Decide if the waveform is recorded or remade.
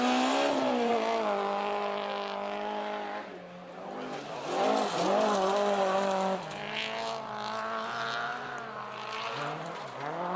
recorded